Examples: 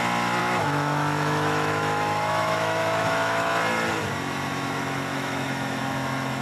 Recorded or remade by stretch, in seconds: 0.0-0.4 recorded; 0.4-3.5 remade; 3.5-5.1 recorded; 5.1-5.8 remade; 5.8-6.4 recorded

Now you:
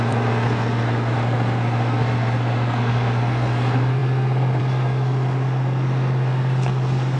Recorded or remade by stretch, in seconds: 0.0-7.2 remade

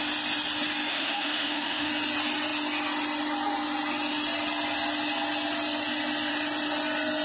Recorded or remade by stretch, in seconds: 0.0-0.9 recorded; 0.9-1.9 remade; 1.9-7.2 recorded

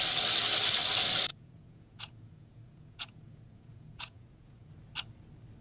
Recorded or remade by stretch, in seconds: 0.0-1.3 recorded; 1.3-4.7 remade; 4.7-5.6 recorded